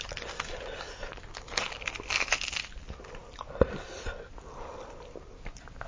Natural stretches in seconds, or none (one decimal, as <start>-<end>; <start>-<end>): 0.0-5.9

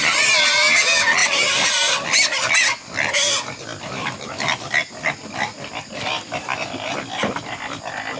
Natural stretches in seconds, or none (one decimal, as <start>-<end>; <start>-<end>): 0.0-1.2; 2.5-8.2

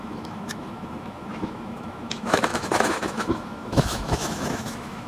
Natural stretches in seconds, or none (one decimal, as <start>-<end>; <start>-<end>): none

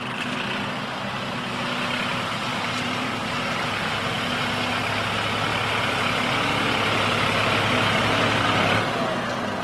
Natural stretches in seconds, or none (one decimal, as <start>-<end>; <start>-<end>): 0.0-2.5; 3.9-9.6

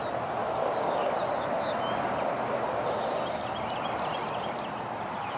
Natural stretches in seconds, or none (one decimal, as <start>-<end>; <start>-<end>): 0.0-0.4; 1.1-5.4

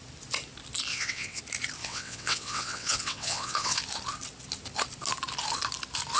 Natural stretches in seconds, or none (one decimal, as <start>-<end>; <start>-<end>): 0.0-0.9; 1.4-1.8; 3.8-6.2

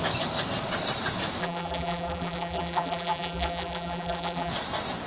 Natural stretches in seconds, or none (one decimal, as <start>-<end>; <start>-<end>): 0.0-1.4; 4.5-5.1